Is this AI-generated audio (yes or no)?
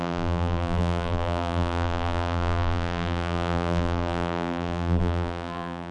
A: yes